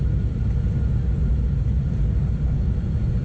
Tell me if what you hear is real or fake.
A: fake